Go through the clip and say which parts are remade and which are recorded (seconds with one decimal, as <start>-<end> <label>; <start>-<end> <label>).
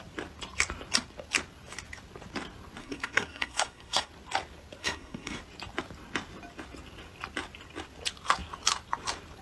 0.0-2.8 recorded; 2.8-4.1 remade; 4.1-4.8 recorded; 4.8-5.4 remade; 5.4-9.4 recorded